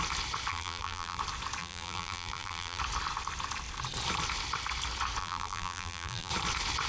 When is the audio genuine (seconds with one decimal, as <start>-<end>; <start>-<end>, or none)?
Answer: 0.0-0.5; 1.2-1.6; 2.8-5.2; 6.3-6.9